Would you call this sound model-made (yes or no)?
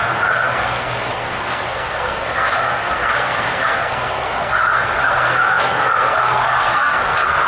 yes